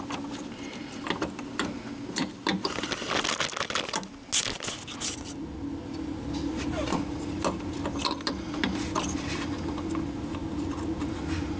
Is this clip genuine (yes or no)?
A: yes